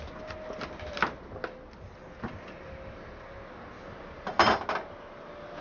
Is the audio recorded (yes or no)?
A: yes